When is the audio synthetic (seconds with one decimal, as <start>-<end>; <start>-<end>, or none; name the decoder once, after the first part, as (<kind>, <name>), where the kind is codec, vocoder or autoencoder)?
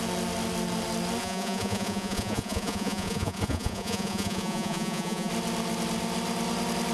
1.2-5.3 (vocoder, Vocos)